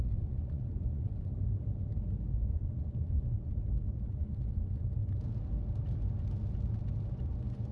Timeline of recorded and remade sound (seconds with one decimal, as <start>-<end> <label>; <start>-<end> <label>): 0.0-1.3 remade; 1.3-2.3 recorded; 2.3-3.5 remade; 3.5-4.1 recorded; 4.1-5.0 remade; 5.0-7.1 recorded; 7.1-7.7 remade